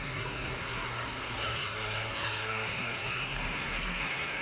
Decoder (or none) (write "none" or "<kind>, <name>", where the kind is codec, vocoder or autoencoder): codec, SNAC